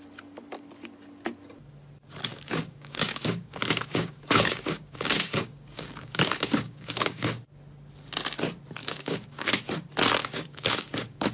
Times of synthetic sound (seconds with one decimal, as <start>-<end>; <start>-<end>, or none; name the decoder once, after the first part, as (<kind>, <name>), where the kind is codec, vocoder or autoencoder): 2.3-7.4 (codec, DAC); 8.8-9.6; 10.2-11.3